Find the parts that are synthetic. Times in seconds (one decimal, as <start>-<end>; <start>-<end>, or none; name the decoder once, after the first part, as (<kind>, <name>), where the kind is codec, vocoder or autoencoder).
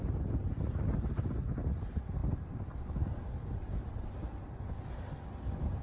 none